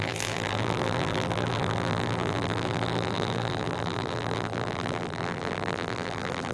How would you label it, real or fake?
fake